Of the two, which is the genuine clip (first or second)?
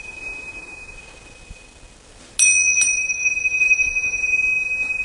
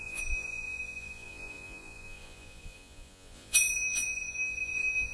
first